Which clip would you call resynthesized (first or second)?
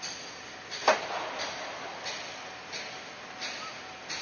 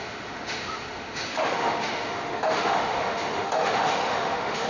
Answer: second